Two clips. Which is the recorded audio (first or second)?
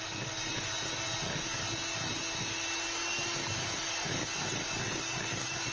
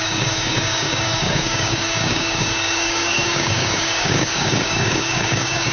first